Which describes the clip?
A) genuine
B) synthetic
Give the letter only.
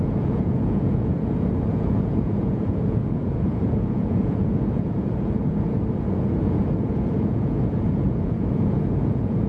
B